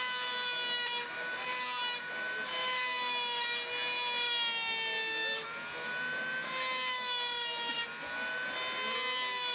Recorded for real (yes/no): yes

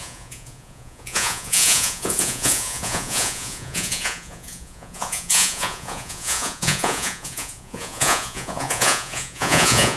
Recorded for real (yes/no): no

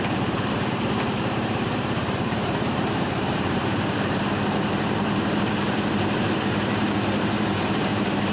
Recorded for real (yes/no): no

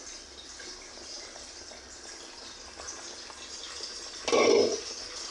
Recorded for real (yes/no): yes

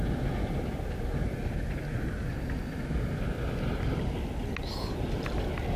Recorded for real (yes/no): yes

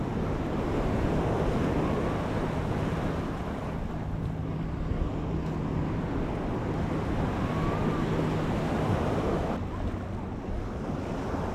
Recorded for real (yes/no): yes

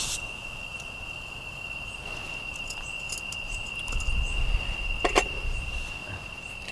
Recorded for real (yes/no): yes